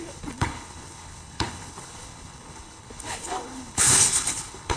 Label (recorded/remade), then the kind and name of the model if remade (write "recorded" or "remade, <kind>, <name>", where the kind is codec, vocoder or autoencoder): remade, codec, HILCodec